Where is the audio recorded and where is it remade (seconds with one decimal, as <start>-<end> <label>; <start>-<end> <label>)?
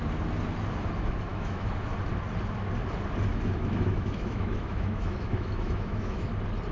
0.0-1.3 recorded; 1.3-1.9 remade; 1.9-3.3 recorded; 3.3-6.3 remade; 6.3-6.7 recorded